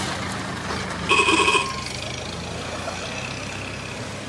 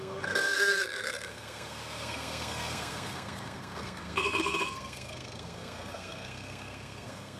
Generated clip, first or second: second